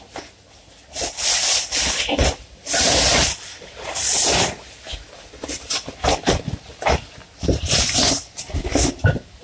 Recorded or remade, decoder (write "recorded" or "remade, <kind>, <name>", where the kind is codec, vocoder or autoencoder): remade, vocoder, BigVGAN v2